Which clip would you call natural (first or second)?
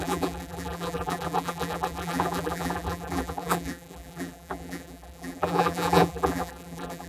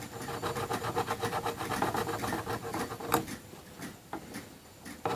second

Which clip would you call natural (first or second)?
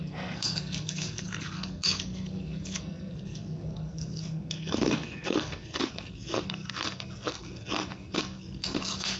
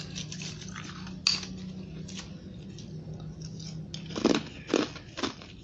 second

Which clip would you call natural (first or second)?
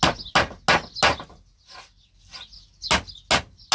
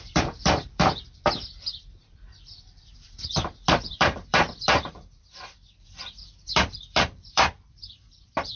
first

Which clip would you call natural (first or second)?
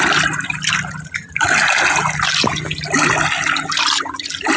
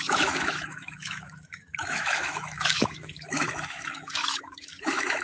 first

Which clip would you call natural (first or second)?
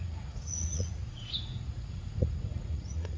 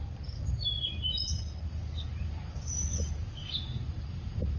second